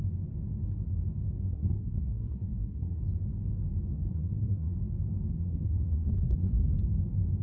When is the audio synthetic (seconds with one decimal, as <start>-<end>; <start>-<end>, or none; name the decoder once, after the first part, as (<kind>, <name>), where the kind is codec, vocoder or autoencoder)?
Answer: 1.4-3.0 (codec, SNAC); 3.9-4.8; 5.3-6.7